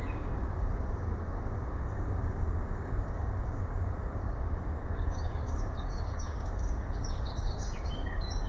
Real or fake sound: fake